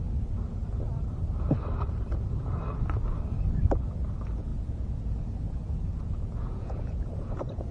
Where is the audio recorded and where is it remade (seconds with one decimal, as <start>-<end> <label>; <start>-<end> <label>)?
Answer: 0.0-4.5 recorded; 4.5-7.7 remade